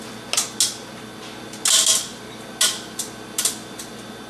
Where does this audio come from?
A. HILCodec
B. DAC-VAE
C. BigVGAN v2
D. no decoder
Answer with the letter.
D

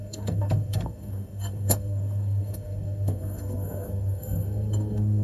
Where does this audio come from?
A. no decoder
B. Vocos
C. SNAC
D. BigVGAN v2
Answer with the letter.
C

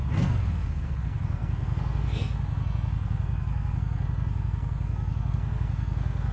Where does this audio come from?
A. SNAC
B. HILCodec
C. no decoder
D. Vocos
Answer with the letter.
A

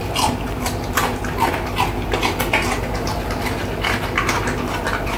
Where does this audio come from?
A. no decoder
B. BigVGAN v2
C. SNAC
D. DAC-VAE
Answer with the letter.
A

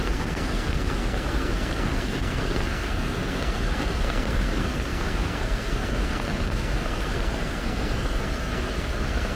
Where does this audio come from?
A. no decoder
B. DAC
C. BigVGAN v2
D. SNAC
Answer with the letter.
D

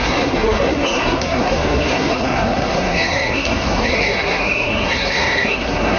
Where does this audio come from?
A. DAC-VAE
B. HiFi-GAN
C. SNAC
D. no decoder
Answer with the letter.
C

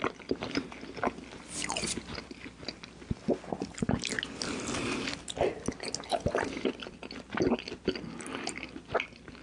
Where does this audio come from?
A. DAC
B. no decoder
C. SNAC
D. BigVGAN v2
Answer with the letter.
B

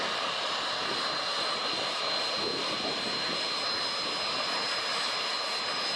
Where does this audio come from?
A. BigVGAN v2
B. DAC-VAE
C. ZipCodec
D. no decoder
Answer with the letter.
D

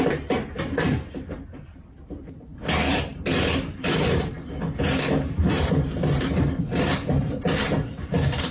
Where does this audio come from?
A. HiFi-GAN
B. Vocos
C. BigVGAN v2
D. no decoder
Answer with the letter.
C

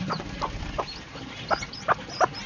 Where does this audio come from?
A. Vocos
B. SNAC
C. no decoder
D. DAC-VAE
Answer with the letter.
C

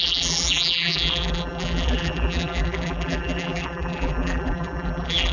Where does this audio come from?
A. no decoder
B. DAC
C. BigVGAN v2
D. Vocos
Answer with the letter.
C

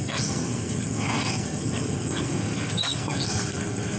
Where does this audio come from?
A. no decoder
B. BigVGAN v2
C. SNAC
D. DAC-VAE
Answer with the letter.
C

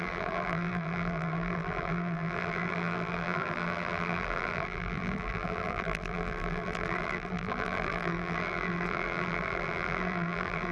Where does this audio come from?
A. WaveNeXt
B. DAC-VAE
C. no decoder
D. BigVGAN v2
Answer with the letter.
D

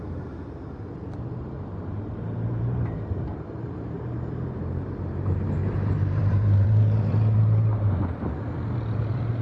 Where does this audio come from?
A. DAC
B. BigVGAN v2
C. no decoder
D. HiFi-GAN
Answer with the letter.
B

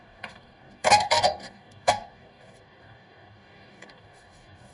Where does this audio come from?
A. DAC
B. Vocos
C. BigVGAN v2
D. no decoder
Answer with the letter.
A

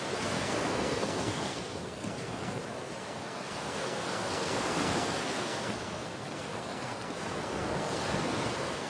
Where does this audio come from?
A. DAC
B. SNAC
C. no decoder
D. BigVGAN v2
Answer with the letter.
B